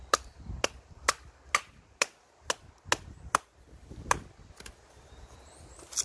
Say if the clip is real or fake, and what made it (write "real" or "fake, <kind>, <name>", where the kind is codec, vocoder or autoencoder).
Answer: real